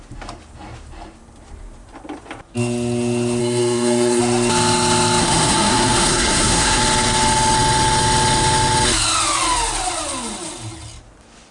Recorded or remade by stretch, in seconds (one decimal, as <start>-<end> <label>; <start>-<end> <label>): 0.0-3.4 recorded; 3.4-4.2 remade; 4.2-5.2 recorded; 5.2-6.8 remade; 6.8-11.5 recorded